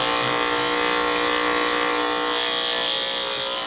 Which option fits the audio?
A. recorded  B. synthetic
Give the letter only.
A